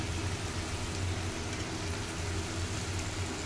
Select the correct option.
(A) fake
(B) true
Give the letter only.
B